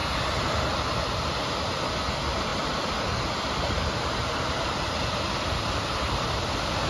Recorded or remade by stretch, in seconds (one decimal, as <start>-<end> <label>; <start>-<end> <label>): 0.0-6.9 recorded

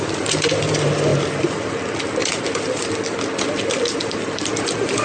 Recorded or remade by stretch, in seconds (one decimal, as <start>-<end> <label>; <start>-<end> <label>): 0.0-5.0 recorded